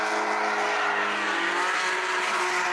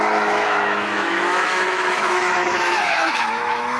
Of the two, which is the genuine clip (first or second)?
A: first